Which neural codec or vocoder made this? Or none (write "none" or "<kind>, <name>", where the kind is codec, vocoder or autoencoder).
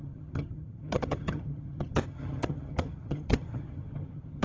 vocoder, HiFi-GAN